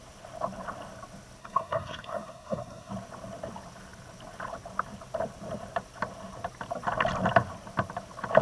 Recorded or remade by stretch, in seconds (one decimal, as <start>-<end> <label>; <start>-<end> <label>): 0.0-1.4 recorded; 1.4-2.9 remade; 2.9-8.4 recorded